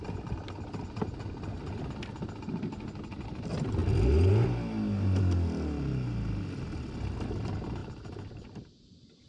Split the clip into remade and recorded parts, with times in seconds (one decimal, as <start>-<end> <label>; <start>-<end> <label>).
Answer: 0.0-9.3 recorded